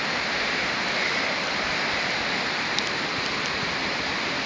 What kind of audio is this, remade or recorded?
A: remade